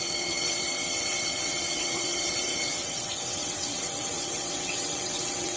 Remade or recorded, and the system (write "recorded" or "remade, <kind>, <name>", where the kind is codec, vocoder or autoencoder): remade, vocoder, WaveNeXt